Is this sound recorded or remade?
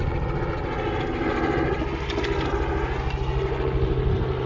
recorded